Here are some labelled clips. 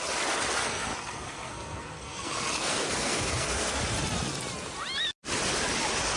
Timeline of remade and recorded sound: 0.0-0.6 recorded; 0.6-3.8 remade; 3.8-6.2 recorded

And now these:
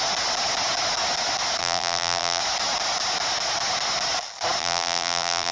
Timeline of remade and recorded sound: 0.0-1.6 recorded; 1.6-2.4 remade; 2.4-4.6 recorded; 4.6-5.5 remade

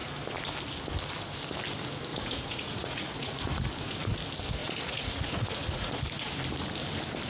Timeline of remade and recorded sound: 0.0-2.1 recorded; 2.1-3.7 remade; 3.7-4.6 recorded; 4.6-6.0 remade; 6.0-7.3 recorded